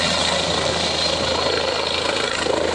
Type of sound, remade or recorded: recorded